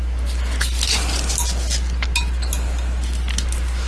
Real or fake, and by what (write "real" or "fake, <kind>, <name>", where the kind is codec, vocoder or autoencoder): real